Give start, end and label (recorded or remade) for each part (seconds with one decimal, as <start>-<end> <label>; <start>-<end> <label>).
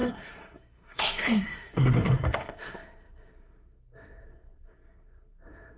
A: 0.0-5.8 remade